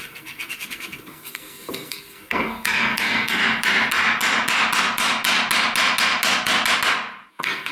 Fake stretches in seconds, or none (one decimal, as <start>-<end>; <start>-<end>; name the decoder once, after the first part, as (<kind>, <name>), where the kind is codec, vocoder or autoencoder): 0.0-3.4 (codec, SNAC); 7.3-7.7